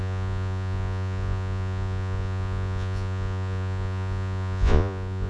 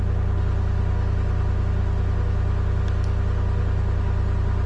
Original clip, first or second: second